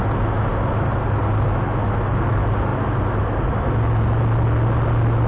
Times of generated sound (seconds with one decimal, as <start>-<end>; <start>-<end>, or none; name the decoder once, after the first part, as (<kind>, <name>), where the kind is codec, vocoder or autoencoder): none